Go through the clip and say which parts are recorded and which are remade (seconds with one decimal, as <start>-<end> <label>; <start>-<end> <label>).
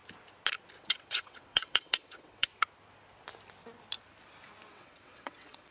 0.0-0.8 recorded; 0.8-2.5 remade; 2.5-4.7 recorded; 4.7-5.7 remade